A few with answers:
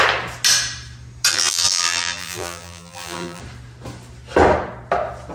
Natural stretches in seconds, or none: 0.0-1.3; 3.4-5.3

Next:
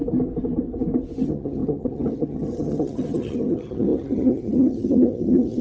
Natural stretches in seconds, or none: 0.0-1.2